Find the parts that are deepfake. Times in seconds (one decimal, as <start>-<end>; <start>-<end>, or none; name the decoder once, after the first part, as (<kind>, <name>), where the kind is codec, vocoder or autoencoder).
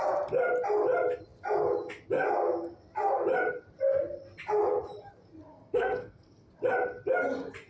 5.5-6.5 (codec, SNAC)